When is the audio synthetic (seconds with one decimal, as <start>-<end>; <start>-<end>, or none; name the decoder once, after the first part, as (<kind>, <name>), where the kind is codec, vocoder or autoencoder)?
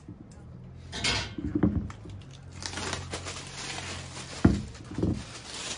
none